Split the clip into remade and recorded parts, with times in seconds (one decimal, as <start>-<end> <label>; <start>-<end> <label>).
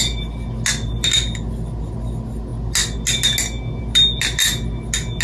0.0-5.2 recorded